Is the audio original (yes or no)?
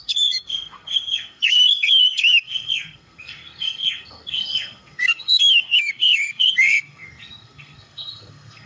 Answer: no